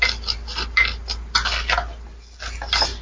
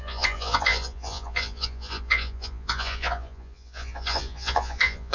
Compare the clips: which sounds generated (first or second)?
second